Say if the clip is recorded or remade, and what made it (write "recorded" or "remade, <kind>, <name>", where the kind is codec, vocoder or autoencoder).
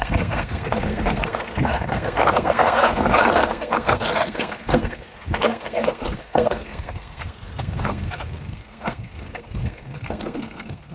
remade, codec, SNAC